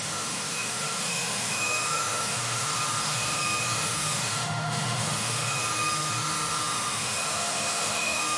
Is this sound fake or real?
fake